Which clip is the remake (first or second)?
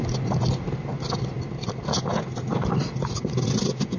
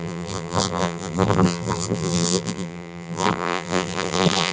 second